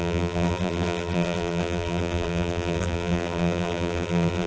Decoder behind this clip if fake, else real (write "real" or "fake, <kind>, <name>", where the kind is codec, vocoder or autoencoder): fake, vocoder, BigVGAN v2